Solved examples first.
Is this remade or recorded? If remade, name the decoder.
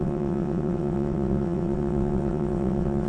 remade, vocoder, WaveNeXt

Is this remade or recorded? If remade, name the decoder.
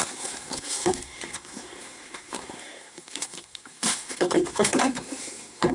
remade, codec, SNAC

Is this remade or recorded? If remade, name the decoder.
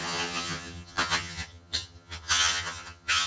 remade, vocoder, HiFi-GAN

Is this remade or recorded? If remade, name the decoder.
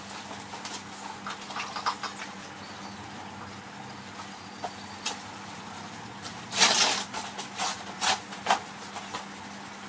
recorded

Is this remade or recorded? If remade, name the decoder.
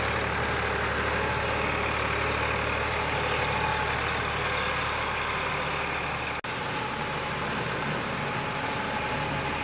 recorded